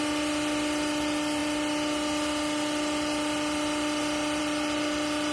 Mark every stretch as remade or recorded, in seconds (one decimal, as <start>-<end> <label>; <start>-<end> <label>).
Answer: 0.0-5.3 recorded